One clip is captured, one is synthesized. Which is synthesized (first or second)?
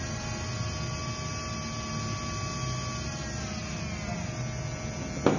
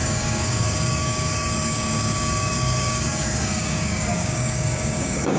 second